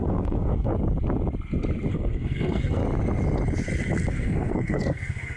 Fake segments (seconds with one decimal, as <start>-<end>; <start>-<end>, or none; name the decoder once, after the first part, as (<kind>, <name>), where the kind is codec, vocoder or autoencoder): 0.0-0.7 (codec, SNAC); 1.9-2.8; 4.1-5.4